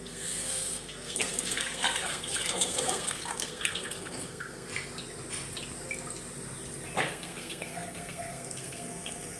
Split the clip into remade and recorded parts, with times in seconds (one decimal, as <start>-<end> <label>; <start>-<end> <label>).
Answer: 0.0-4.7 remade; 4.7-7.0 recorded; 7.0-9.4 remade